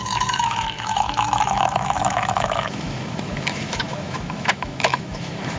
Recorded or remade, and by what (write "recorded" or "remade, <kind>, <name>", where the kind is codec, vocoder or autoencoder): remade, autoencoder, DAC-VAE